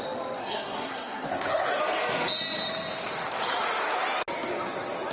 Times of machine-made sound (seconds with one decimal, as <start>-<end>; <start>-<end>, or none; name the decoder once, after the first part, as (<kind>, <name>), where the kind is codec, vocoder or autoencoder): 0.4-1.8 (codec, SNAC)